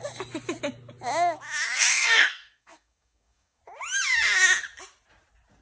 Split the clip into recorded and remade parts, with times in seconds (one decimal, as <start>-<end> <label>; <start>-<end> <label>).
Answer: 0.0-1.9 recorded; 1.9-3.6 remade; 3.6-5.6 recorded